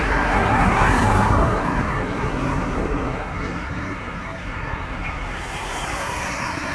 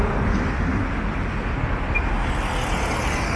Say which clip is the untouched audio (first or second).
second